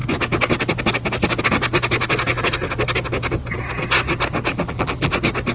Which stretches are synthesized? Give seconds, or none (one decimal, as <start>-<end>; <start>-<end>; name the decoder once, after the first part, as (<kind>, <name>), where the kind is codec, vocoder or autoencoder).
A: 4.5-5.1 (vocoder, BigVGAN v2)